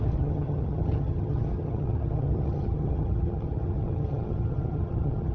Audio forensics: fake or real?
fake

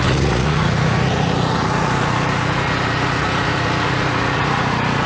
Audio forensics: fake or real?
fake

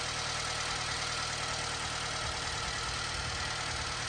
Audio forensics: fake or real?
real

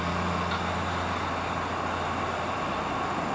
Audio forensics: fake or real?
real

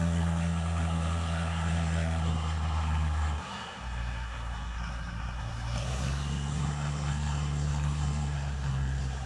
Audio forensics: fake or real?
fake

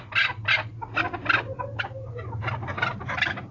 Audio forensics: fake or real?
real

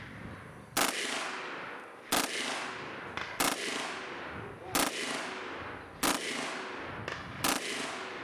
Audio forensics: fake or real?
real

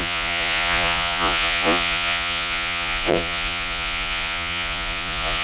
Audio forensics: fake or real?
fake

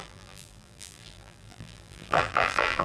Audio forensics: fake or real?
fake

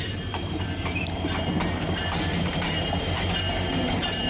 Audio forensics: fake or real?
real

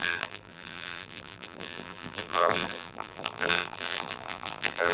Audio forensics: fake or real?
fake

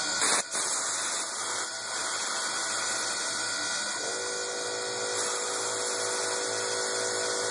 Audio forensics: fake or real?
real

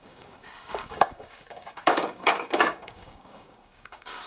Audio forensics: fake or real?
fake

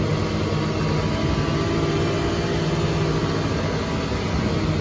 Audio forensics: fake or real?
real